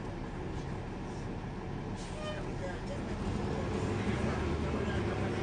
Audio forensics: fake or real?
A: real